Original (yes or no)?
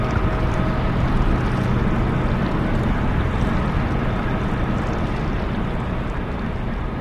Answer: yes